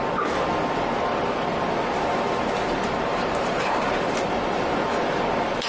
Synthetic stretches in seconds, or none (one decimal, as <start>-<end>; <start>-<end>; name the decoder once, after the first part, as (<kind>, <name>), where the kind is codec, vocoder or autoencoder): 3.1-4.0 (vocoder, BigVGAN v2)